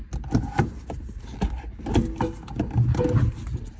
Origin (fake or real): real